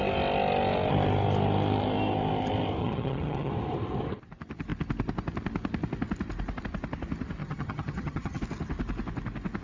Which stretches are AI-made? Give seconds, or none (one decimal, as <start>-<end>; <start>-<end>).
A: 2.8-3.5; 7.4-8.4